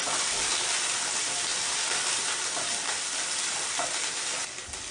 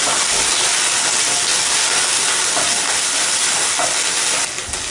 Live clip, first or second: second